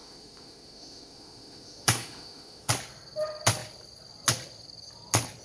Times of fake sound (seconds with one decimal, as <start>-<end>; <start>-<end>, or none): 0.0-2.7